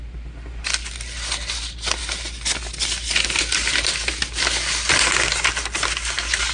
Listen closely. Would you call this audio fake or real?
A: real